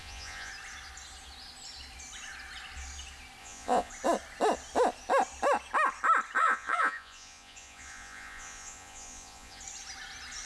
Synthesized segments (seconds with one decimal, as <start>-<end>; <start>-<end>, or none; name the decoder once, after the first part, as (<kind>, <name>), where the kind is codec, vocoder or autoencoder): 0.0-0.5 (vocoder, Vocos); 3.4-3.9; 6.4-9.6